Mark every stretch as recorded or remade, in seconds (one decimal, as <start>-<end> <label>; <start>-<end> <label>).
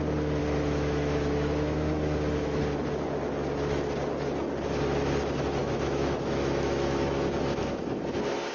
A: 0.0-0.4 recorded; 0.4-2.6 remade; 2.6-5.6 recorded; 5.6-8.1 remade; 8.1-8.5 recorded